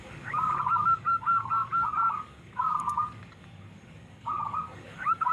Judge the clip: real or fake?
fake